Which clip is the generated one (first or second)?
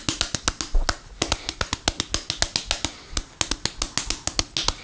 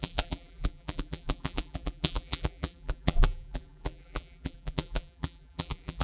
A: second